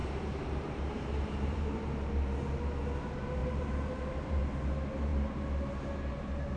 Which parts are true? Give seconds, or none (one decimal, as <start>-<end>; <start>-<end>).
2.1-3.4; 4.4-6.6